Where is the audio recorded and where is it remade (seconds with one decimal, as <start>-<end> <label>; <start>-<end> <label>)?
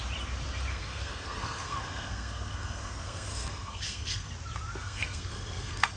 0.0-0.7 recorded; 0.7-4.3 remade; 4.3-4.8 recorded; 4.8-6.0 remade